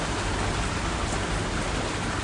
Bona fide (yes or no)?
yes